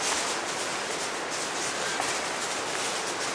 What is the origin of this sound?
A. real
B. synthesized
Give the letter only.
A